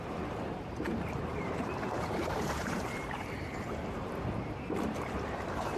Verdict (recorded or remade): remade